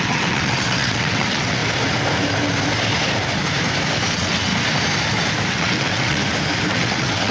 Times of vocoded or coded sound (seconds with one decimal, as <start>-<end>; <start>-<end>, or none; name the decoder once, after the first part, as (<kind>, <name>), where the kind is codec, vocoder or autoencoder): 0.0-1.6 (vocoder, WaveNeXt); 4.1-4.5; 5.5-6.2; 6.7-7.3